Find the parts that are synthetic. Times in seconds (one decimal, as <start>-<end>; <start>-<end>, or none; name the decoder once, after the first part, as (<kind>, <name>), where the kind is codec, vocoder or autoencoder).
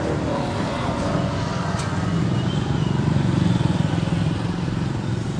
0.7-3.9 (vocoder, Vocos)